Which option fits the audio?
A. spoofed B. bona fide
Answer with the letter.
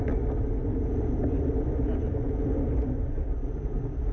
B